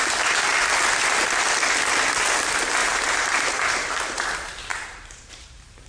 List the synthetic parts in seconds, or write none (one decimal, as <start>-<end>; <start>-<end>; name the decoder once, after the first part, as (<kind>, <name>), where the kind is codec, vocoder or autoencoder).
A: 2.8-3.9 (vocoder, BigVGAN v2); 4.7-5.9